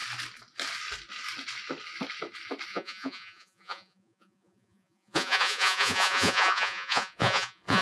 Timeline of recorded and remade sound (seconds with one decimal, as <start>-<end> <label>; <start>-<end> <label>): 0.0-2.7 recorded; 2.7-7.8 remade